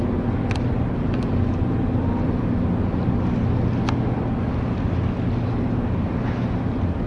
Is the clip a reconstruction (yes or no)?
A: no